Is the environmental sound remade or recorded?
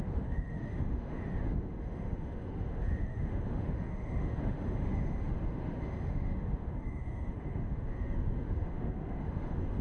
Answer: remade